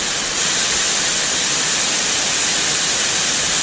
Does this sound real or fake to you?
real